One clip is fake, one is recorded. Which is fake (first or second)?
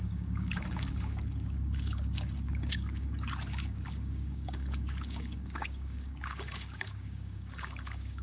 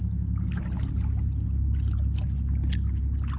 first